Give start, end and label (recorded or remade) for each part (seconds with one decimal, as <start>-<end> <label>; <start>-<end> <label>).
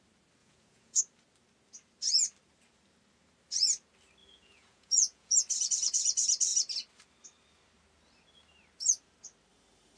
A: 0.0-0.4 recorded; 0.4-1.0 remade; 1.0-4.2 recorded; 4.2-5.4 remade; 5.4-10.0 recorded